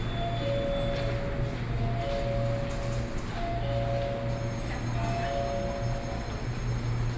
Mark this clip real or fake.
real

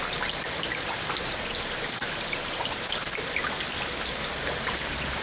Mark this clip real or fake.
real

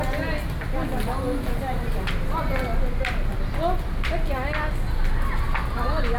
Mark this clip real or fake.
real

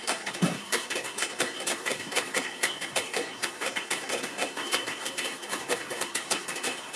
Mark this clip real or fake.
fake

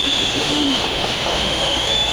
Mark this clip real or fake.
fake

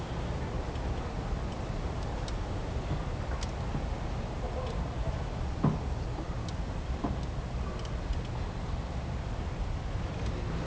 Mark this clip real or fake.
real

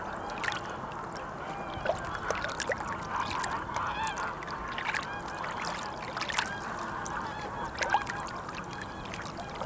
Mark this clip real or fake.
real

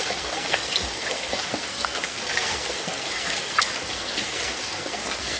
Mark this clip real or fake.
fake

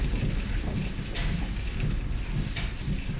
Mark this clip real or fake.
real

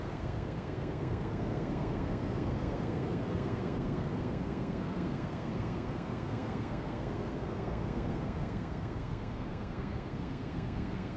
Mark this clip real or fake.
fake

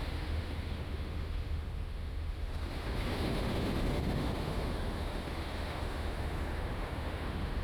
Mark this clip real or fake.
fake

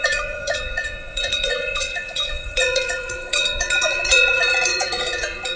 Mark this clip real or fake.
fake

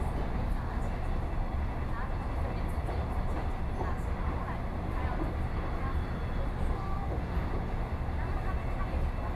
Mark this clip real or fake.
real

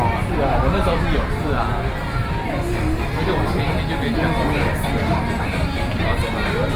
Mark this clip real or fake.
real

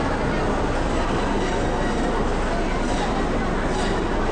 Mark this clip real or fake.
real